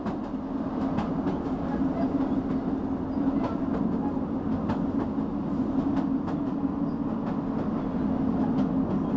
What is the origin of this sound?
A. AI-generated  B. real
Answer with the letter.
B